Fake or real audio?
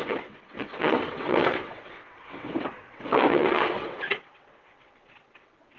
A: fake